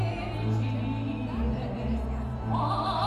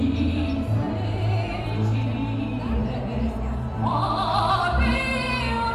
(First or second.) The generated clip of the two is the second